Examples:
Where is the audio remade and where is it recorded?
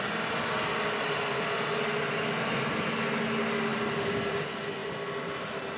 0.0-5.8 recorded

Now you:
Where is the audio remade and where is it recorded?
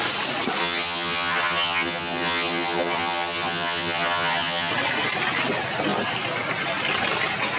0.0-0.6 recorded; 0.6-4.7 remade; 4.7-7.6 recorded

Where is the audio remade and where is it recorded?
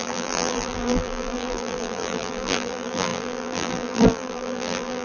0.0-5.0 remade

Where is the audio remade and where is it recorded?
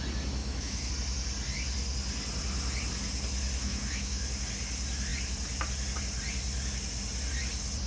0.0-0.4 recorded; 0.4-0.9 remade; 0.9-3.6 recorded; 3.6-4.2 remade; 4.2-7.9 recorded